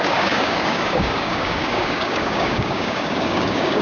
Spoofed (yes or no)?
yes